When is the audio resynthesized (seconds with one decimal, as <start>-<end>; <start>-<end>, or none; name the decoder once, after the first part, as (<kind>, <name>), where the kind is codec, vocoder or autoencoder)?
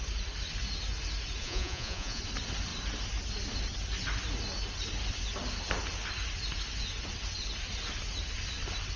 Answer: 1.4-2.2 (vocoder, Vocos)